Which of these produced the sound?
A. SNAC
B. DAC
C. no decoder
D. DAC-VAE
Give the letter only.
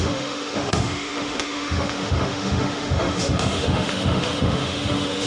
D